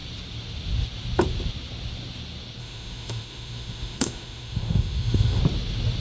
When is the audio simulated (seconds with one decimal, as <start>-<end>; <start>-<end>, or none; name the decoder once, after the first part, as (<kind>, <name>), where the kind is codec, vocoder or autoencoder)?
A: 2.6-5.4 (autoencoder, DAC-VAE)